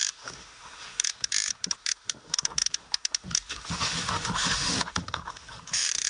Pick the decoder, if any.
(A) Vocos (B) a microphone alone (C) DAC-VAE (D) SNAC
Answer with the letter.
C